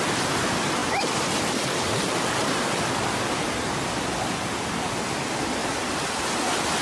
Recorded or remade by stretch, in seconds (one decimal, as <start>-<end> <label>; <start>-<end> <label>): 0.0-6.8 recorded